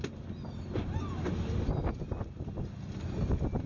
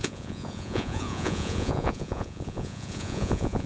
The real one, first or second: first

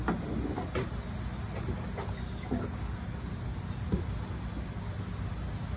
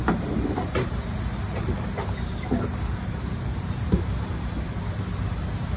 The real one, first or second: first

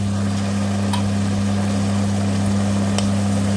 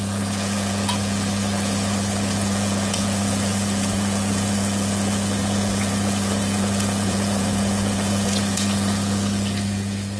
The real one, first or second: first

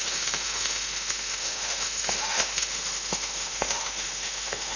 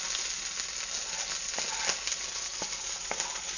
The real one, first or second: second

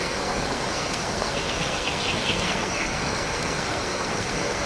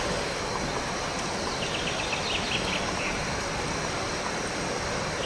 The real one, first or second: second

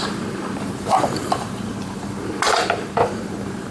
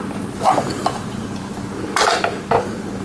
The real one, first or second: second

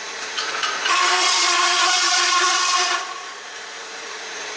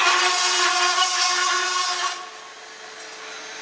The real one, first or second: second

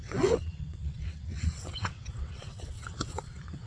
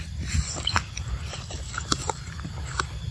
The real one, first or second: second